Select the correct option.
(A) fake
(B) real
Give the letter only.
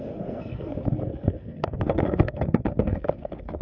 A